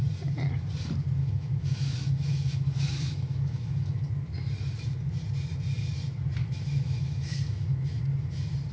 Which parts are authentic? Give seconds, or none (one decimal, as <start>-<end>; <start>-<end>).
0.0-1.2; 4.0-6.4; 8.0-8.7